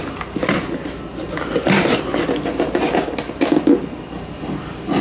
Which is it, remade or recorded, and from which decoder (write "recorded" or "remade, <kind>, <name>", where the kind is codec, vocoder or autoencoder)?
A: recorded